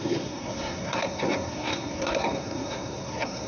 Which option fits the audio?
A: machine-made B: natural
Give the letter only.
A